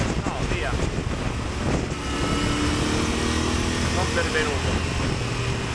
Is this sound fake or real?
real